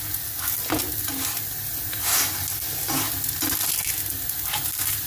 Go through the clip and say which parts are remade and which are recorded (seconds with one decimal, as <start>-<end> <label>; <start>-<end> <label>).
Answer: 0.0-5.1 recorded